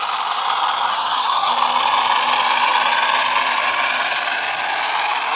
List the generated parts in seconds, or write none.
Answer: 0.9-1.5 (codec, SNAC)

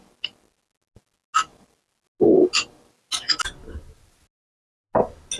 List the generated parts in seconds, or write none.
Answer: none

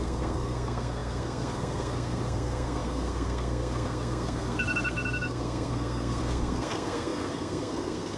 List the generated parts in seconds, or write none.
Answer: 0.0-8.2 (codec, SNAC)

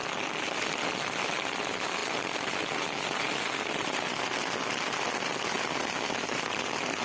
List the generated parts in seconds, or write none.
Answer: none

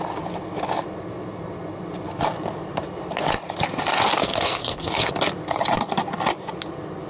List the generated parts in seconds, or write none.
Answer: 4.2-5.1 (codec, SNAC)

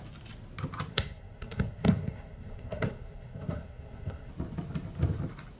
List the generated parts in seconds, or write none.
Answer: 0.9-4.3 (codec, SNAC)

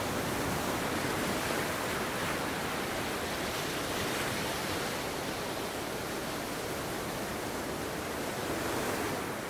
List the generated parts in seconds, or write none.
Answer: none